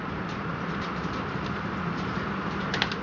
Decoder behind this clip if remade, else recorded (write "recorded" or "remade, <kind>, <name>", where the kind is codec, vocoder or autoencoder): remade, vocoder, BigVGAN v2